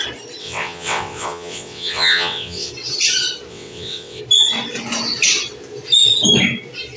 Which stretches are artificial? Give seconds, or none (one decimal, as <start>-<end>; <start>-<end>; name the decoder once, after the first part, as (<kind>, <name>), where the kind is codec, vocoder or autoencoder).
0.4-2.7 (vocoder, WaveNeXt); 3.5-4.2